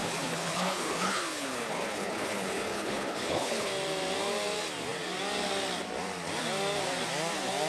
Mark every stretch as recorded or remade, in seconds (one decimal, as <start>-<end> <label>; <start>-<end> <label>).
0.0-3.7 remade; 3.7-7.7 recorded